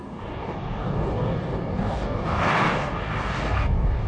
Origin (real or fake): fake